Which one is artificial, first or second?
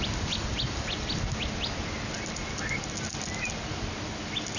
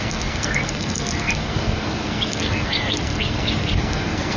second